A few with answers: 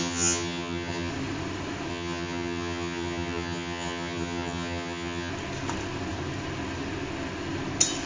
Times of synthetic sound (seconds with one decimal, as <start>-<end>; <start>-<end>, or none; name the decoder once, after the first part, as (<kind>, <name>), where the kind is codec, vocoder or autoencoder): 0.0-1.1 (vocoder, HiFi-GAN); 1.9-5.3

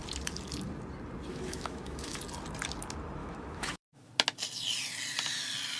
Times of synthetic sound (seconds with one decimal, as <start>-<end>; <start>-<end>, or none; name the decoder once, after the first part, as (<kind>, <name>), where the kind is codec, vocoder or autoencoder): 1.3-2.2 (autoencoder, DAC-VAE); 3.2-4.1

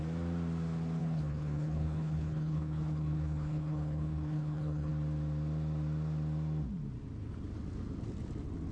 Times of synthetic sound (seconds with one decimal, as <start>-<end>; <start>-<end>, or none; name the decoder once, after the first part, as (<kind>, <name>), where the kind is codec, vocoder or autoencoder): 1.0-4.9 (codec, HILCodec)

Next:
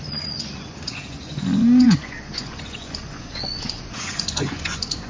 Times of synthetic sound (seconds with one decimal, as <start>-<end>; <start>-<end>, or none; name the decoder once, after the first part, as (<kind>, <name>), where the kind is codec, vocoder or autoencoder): 0.0-1.3 (vocoder, Vocos); 1.8-5.1

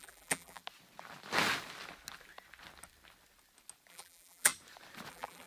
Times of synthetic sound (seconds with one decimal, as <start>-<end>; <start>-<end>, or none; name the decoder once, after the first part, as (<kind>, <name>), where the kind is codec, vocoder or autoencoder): 0.0-0.6 (vocoder, BigVGAN v2); 3.9-4.5; 5.1-5.5

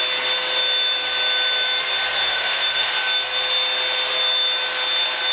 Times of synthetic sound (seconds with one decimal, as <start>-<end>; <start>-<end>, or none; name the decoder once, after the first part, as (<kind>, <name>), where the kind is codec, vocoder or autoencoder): 2.2-2.9 (autoencoder, DAC-VAE)

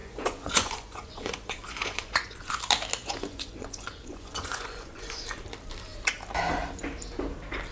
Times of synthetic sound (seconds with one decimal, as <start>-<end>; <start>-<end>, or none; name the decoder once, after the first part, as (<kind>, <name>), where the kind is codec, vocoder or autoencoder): 0.0-2.6 (vocoder, Vocos); 3.0-5.2

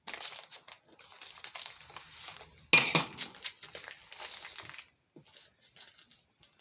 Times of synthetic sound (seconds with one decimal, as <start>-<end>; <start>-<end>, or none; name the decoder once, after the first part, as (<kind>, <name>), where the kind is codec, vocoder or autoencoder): none